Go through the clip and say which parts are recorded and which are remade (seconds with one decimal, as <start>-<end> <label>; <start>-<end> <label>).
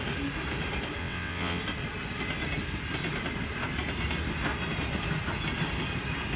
0.0-1.0 recorded; 1.0-1.6 remade; 1.6-6.4 recorded